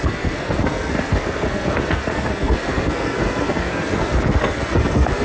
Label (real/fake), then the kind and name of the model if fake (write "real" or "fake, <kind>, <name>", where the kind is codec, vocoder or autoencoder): fake, codec, SNAC